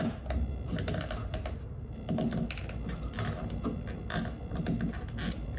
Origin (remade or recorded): recorded